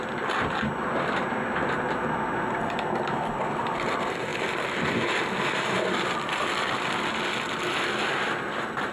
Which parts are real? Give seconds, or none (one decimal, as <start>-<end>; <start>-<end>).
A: 0.0-8.9